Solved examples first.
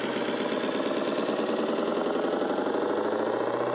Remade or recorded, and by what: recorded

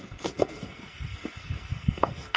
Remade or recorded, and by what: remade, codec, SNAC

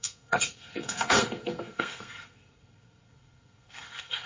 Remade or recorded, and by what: remade, codec, SNAC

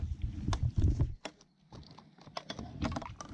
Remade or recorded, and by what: recorded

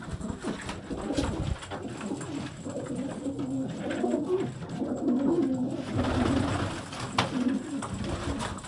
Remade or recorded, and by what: recorded